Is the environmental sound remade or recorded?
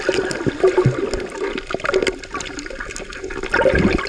recorded